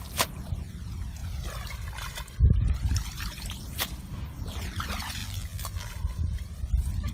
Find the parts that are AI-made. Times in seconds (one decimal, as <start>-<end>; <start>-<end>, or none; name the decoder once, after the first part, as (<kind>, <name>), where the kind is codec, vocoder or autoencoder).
5.2-5.9 (vocoder, BigVGAN v2)